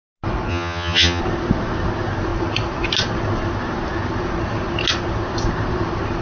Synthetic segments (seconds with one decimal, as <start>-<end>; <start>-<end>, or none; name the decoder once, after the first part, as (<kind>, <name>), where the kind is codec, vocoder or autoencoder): 0.5-1.2 (vocoder, HiFi-GAN)